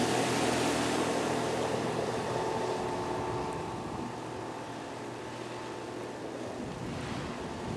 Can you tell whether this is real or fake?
real